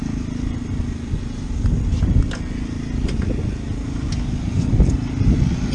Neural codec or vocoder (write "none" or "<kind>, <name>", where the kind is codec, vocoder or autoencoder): none